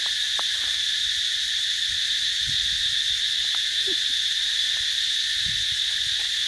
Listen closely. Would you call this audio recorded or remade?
recorded